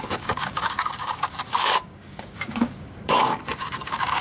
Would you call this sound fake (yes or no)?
yes